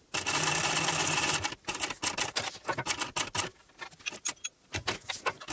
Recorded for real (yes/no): yes